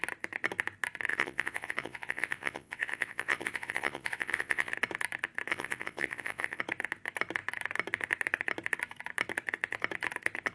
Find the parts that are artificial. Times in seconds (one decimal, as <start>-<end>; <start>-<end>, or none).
1.1-4.7; 5.5-6.6